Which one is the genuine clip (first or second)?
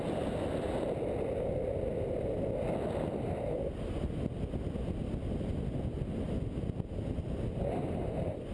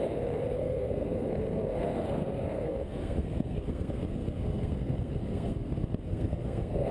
first